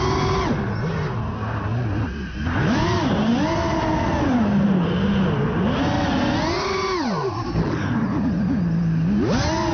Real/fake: real